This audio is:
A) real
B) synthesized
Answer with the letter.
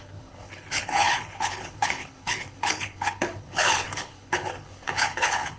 B